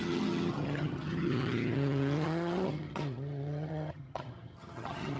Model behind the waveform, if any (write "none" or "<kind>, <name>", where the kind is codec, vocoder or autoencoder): vocoder, HiFi-GAN